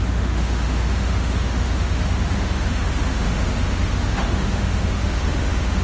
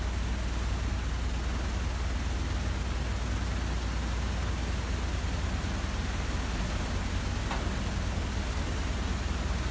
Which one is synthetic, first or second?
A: first